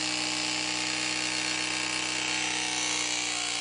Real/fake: real